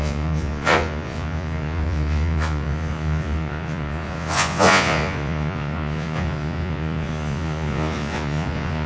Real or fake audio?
fake